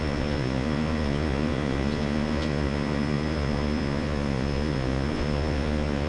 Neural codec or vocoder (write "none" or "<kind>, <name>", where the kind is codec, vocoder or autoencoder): vocoder, Vocos